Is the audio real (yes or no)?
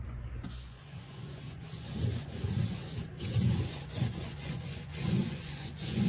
no